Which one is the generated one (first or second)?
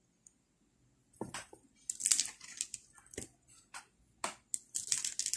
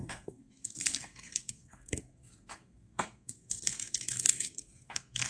second